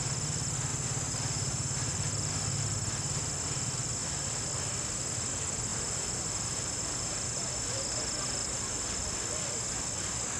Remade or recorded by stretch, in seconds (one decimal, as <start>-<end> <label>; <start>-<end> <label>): 0.0-0.7 recorded; 0.7-2.1 remade; 2.1-5.7 recorded; 5.7-7.5 remade; 7.5-8.4 recorded; 8.4-9.0 remade; 9.0-10.4 recorded